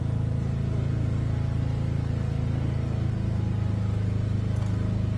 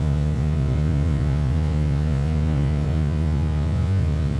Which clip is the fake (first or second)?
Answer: second